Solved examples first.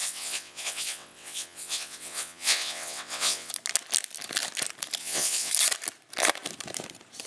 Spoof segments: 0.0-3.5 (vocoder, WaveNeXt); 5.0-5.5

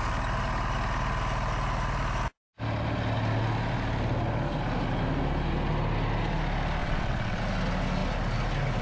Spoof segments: 6.8-7.4 (vocoder, WaveNeXt)

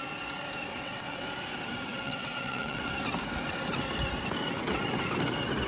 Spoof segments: 0.7-1.3 (vocoder, WaveNeXt); 1.9-2.9

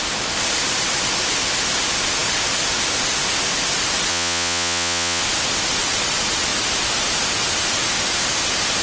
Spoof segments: 4.1-5.2 (vocoder, WaveNeXt)

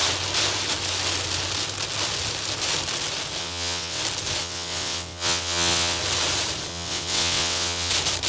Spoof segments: 3.4-4.0 (vocoder, WaveNeXt); 4.4-6.0; 6.7-7.9

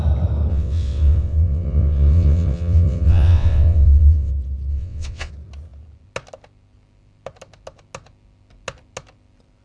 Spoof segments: 0.5-4.3 (vocoder, WaveNeXt); 4.7-5.3

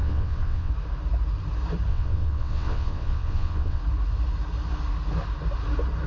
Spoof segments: 0.0-0.7 (vocoder, WaveNeXt); 1.9-3.8

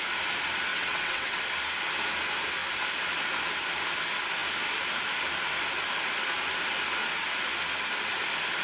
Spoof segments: 0.7-1.4 (vocoder, WaveNeXt)